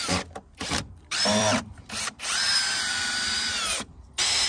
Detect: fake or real fake